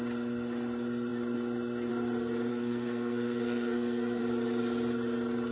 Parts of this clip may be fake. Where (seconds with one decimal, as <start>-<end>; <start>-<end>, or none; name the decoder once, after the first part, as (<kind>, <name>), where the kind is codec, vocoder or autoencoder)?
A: 2.5-4.2 (codec, SNAC)